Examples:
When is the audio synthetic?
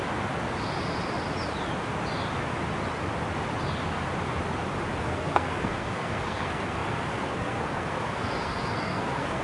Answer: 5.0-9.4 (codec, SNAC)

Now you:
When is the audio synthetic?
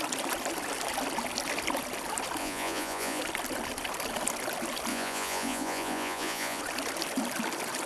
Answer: 2.4-3.2 (vocoder, Vocos); 4.9-6.6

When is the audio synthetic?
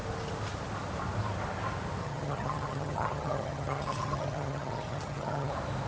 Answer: 2.0-5.5 (vocoder, HiFi-GAN)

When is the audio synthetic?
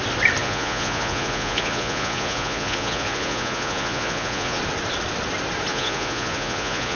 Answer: 0.4-4.6 (vocoder, Vocos); 5.7-7.0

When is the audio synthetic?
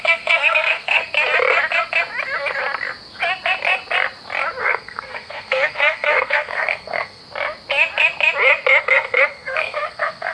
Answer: 0.0-1.0 (codec, SNAC); 4.6-7.2; 8.8-10.3